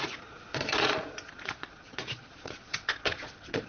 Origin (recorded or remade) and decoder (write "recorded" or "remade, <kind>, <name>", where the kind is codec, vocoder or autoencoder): remade, vocoder, Vocos